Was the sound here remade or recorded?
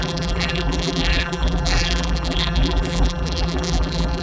remade